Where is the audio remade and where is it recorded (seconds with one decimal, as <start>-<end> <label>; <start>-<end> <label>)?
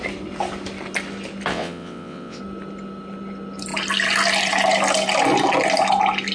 0.0-1.5 recorded; 1.5-2.4 remade; 2.4-6.3 recorded